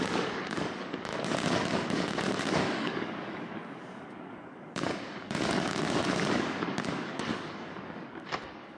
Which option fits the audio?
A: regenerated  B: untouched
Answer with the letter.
A